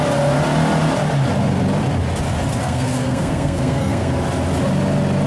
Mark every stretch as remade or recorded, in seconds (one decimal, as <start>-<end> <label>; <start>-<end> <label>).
0.0-2.6 recorded; 2.6-4.1 remade; 4.1-5.3 recorded